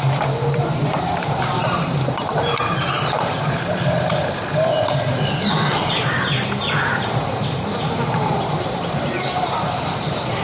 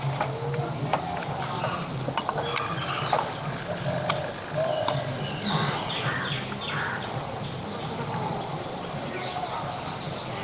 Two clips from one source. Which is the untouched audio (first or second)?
second